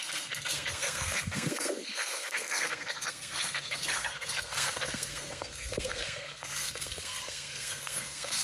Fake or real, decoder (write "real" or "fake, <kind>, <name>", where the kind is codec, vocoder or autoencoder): fake, codec, SNAC